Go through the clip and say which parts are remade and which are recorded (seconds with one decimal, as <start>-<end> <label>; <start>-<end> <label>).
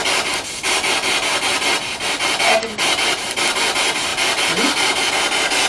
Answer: 0.0-5.7 recorded